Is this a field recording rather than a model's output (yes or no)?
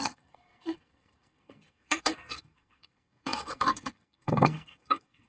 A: no